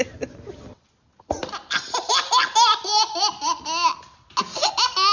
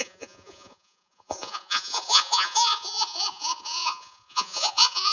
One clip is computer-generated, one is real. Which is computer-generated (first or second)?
second